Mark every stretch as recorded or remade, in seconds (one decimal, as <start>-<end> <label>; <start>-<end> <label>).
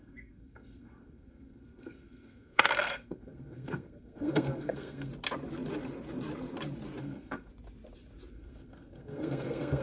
0.0-5.1 remade; 5.1-7.0 recorded; 7.0-7.5 remade; 7.5-8.3 recorded; 8.3-9.8 remade